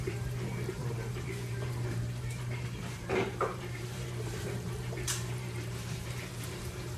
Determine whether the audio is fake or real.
fake